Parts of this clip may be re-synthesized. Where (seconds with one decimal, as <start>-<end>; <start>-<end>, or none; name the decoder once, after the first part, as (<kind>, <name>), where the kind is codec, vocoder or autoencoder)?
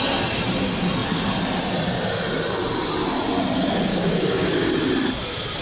3.9-4.7 (codec, DAC)